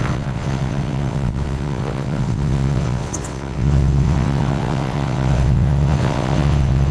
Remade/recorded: remade